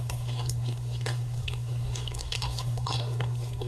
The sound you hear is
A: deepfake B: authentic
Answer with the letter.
A